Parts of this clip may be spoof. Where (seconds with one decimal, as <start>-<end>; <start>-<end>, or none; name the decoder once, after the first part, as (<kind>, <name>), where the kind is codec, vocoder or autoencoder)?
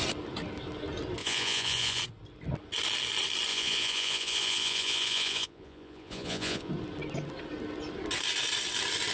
1.2-2.0 (vocoder, Vocos); 3.5-6.7